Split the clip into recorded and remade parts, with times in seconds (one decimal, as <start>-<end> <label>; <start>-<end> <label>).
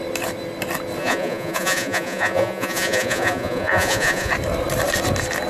0.0-1.0 recorded; 1.0-4.3 remade; 4.3-5.5 recorded